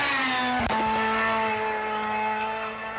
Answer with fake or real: real